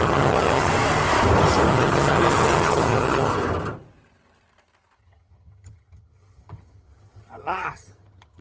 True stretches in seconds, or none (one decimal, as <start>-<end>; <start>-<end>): 0.7-1.7; 3.3-5.0